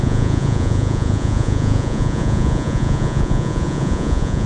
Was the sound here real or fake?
fake